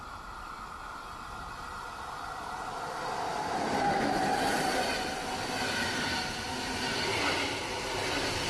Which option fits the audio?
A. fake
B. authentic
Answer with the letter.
B